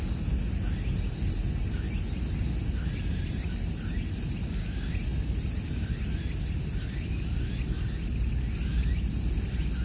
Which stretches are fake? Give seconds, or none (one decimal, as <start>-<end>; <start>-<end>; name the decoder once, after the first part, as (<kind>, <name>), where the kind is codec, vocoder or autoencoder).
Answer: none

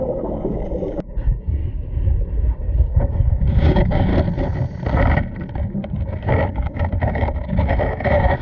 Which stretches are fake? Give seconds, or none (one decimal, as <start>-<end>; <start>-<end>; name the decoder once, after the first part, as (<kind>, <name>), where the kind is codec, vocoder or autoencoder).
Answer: 0.0-1.6 (codec, DAC); 2.6-4.1; 5.9-8.4

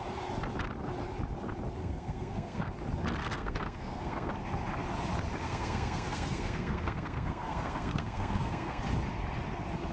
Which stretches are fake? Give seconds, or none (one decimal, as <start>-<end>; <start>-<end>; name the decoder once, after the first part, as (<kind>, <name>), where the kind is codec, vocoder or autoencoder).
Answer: 1.8-2.7 (codec, SNAC); 3.2-4.3; 5.4-8.8

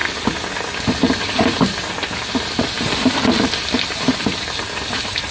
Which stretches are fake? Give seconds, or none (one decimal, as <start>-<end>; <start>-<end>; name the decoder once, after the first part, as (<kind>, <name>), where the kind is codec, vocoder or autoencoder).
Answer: none

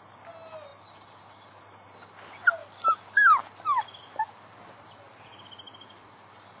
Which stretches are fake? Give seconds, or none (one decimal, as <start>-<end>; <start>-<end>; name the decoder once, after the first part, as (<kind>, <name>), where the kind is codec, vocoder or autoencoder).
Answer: none

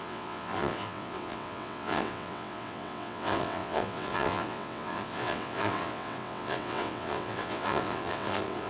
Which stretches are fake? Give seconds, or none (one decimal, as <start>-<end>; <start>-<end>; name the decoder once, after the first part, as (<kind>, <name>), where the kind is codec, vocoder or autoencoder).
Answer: 0.0-8.7 (vocoder, WaveNeXt)

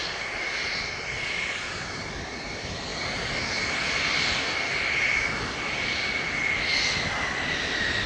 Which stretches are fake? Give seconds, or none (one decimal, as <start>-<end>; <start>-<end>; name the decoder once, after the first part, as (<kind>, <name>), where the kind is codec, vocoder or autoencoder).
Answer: none

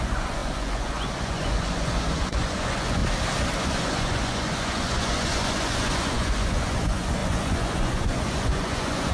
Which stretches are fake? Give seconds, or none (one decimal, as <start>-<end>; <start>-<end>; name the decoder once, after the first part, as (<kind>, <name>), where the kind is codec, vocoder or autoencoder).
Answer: 0.0-3.0 (vocoder, Vocos); 3.6-9.1